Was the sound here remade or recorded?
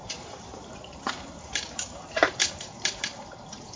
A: remade